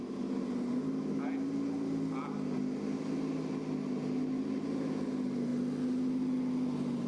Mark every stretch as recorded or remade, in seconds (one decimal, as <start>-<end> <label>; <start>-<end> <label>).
0.0-7.1 recorded